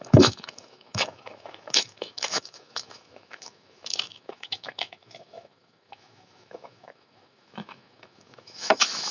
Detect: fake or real fake